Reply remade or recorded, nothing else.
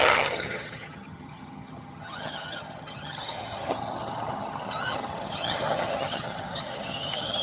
remade